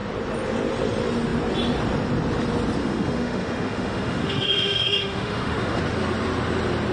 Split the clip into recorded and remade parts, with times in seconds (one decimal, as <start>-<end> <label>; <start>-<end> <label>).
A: 0.0-2.8 recorded; 2.8-5.8 remade; 5.8-6.9 recorded